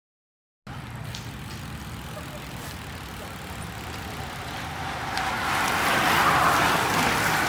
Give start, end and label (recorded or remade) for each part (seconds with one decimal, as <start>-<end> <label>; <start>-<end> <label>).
0.0-7.5 recorded